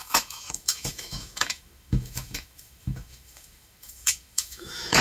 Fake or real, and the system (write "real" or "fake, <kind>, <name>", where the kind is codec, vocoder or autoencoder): fake, autoencoder, DAC-VAE